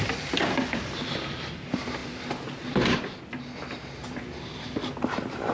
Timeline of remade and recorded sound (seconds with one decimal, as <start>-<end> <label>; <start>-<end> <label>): 0.0-5.5 recorded